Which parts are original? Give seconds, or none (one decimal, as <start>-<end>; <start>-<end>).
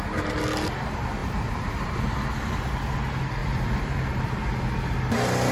0.0-1.2; 1.9-3.4; 4.3-5.5